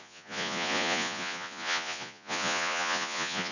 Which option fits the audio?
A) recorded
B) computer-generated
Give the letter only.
B